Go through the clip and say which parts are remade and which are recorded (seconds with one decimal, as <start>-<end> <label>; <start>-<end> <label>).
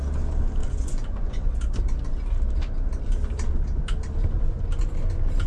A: 0.0-0.6 recorded; 0.6-1.5 remade; 1.5-5.5 recorded